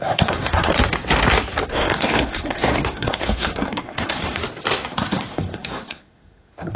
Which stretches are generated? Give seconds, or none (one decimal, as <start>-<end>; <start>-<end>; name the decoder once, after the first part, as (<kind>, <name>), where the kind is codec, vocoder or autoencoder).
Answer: 0.0-0.7 (codec, SNAC); 1.7-4.4; 4.9-6.8